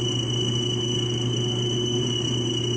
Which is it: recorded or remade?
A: recorded